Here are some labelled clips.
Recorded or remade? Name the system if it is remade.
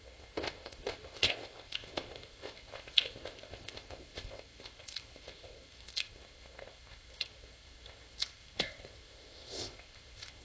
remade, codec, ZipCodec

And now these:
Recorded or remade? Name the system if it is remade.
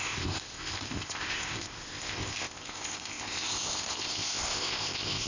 remade, codec, ZipCodec